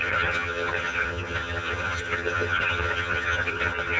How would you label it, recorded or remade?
remade